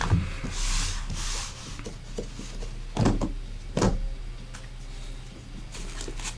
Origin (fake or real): real